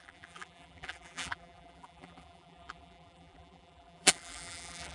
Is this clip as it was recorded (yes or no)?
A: no